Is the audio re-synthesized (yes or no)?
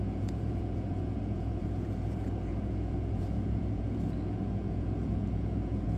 yes